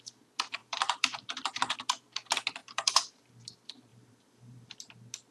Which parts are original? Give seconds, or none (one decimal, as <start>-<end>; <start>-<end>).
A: 0.0-0.6; 1.6-2.6; 3.3-3.9; 4.8-5.3